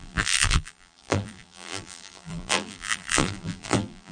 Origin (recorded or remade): remade